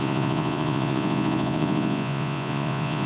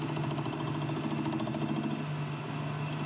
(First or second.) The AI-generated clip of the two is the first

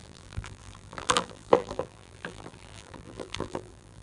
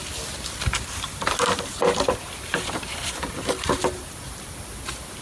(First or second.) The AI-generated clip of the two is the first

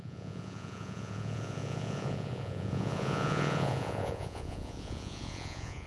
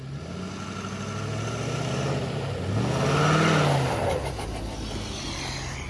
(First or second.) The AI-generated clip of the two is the first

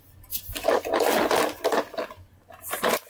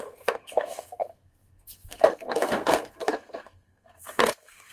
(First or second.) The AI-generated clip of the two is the second